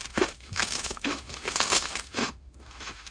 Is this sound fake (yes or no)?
yes